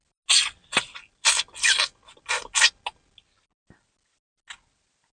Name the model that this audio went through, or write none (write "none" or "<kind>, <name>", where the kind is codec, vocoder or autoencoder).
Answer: none